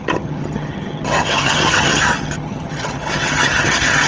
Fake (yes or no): yes